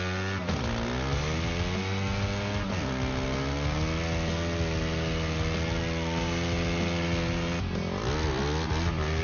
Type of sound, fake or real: real